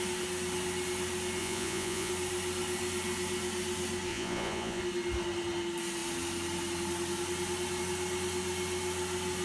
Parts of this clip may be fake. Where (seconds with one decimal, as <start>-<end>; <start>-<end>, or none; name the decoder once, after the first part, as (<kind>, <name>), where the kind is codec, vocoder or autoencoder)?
1.4-2.1 (vocoder, Vocos); 4.1-4.8